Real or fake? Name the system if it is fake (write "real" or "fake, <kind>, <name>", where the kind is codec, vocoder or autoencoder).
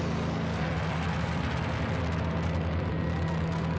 real